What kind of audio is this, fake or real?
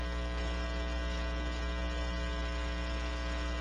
real